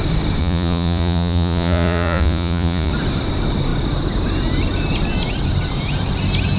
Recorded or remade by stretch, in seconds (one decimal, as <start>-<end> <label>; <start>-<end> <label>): 0.0-0.4 recorded; 0.4-2.9 remade; 2.9-6.6 recorded